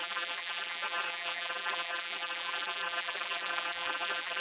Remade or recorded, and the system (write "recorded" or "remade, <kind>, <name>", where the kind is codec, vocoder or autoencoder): remade, vocoder, BigVGAN v2